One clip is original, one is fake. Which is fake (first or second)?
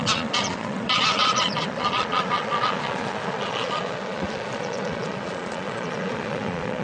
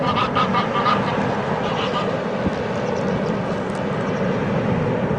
first